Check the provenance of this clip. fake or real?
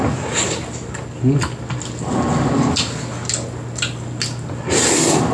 real